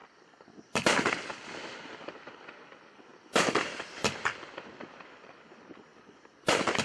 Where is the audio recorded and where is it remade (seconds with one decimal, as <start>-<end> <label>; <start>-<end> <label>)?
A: 0.0-6.8 remade